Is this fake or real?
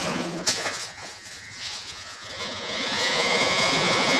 fake